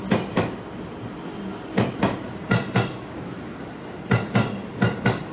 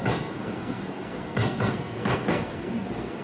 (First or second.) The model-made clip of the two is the second